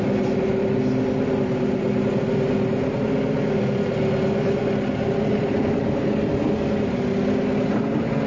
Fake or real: real